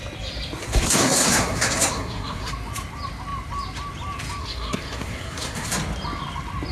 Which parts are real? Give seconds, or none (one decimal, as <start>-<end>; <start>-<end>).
0.0-0.6; 2.5-4.4; 5.7-6.7

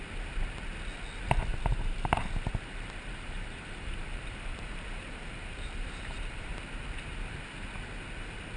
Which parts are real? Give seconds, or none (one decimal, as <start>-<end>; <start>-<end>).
0.0-1.7; 6.4-8.6